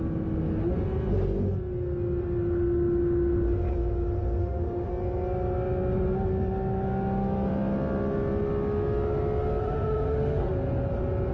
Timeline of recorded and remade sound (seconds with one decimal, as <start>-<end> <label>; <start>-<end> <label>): 0.0-4.4 recorded; 4.4-4.9 remade; 4.9-9.6 recorded; 9.6-10.4 remade; 10.4-11.3 recorded